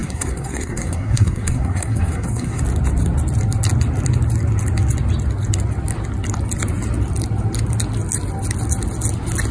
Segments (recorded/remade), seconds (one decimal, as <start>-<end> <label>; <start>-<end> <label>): 0.0-2.6 remade; 2.6-9.5 recorded